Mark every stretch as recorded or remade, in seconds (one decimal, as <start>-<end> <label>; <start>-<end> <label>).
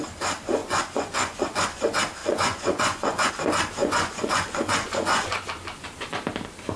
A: 0.0-0.6 recorded; 0.6-1.8 remade; 1.8-2.2 recorded; 2.2-3.3 remade; 3.3-3.8 recorded; 3.8-5.4 remade; 5.4-6.8 recorded